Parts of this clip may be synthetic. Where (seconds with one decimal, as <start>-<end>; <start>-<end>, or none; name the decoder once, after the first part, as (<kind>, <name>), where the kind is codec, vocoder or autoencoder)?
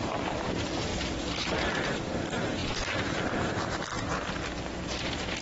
0.0-0.9 (vocoder, BigVGAN v2); 1.7-3.9